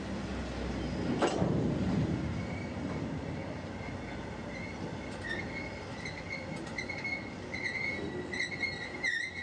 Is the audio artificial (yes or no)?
no